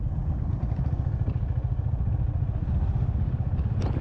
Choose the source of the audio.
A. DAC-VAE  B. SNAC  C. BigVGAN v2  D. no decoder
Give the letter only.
D